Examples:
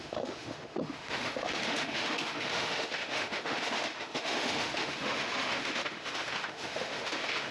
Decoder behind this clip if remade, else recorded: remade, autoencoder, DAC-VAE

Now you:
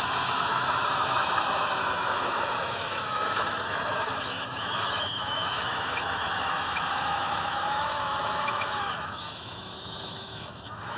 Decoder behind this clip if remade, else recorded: remade, autoencoder, DAC-VAE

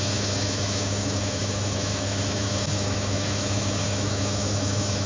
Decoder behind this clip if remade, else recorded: remade, autoencoder, DAC-VAE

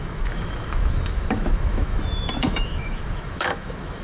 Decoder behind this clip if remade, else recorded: remade, autoencoder, DAC-VAE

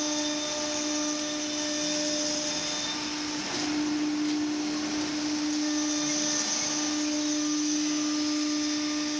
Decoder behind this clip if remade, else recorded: recorded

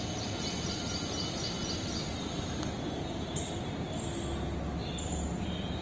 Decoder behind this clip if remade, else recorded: recorded